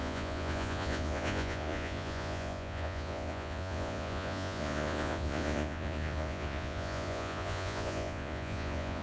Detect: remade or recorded remade